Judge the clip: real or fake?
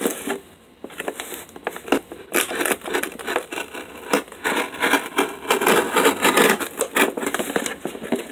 real